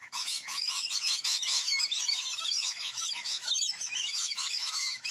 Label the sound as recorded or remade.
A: remade